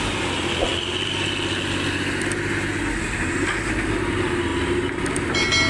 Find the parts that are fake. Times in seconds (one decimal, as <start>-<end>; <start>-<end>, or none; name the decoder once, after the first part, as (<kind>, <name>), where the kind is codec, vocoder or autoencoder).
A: none